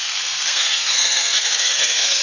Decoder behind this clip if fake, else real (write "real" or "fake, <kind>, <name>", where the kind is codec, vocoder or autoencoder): fake, codec, SNAC